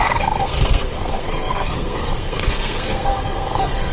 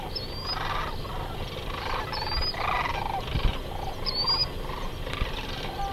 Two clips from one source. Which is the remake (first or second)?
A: first